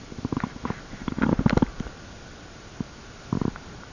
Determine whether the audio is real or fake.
real